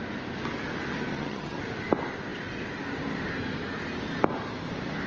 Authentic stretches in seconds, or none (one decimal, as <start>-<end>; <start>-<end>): 0.0-1.1; 1.6-5.1